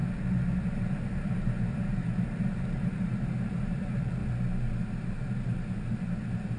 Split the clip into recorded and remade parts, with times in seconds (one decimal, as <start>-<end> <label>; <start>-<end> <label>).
0.0-0.7 recorded; 0.7-4.2 remade; 4.2-5.0 recorded; 5.0-6.6 remade